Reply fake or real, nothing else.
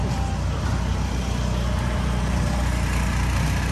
real